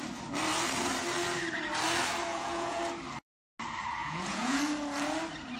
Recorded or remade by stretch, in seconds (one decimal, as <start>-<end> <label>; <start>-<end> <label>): 0.0-2.3 recorded; 2.3-2.8 remade; 2.8-4.0 recorded; 4.0-4.6 remade; 4.6-5.6 recorded